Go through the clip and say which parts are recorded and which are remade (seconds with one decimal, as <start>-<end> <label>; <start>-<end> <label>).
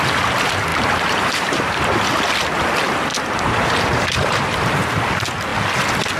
0.0-0.7 recorded; 0.7-2.0 remade; 2.0-3.1 recorded; 3.1-5.0 remade; 5.0-6.2 recorded